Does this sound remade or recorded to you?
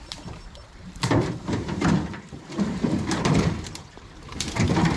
remade